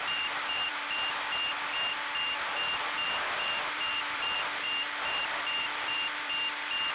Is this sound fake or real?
fake